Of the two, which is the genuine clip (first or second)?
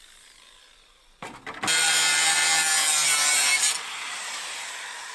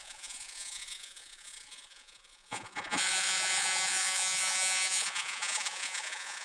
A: first